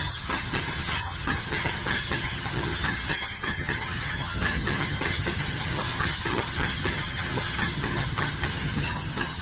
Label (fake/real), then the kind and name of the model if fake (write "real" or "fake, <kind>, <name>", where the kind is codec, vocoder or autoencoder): fake, vocoder, HiFi-GAN